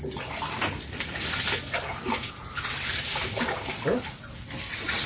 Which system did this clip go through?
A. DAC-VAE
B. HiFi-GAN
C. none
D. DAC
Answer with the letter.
C